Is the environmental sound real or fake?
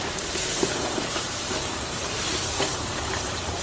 fake